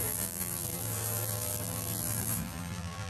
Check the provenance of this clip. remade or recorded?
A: remade